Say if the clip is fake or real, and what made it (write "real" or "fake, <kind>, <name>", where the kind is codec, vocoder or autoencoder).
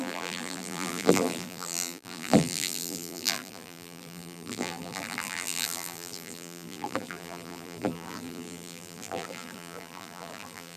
fake, vocoder, BigVGAN v2